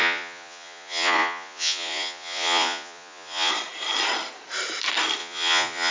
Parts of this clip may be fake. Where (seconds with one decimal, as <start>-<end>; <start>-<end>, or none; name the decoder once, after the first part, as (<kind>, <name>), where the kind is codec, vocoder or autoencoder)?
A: 0.0-3.5 (vocoder, Vocos); 5.2-5.9